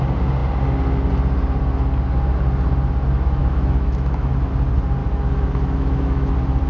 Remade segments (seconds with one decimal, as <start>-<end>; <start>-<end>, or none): 3.4-4.3; 5.0-6.3